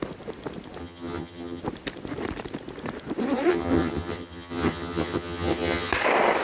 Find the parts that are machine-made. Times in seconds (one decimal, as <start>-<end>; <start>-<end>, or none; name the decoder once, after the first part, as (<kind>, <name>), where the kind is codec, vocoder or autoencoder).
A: 0.8-1.6 (vocoder, HiFi-GAN); 3.5-5.9